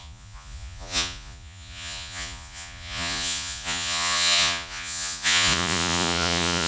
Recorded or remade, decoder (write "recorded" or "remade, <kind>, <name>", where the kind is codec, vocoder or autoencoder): remade, vocoder, Vocos